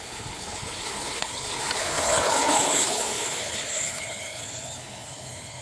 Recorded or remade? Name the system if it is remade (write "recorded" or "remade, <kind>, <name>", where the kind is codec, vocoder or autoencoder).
remade, codec, HILCodec